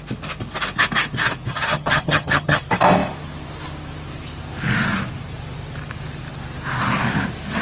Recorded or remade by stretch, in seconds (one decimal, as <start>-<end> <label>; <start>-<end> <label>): 0.0-1.5 recorded; 1.5-2.6 remade; 2.6-7.6 recorded